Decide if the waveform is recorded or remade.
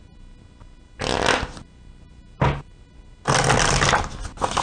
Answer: recorded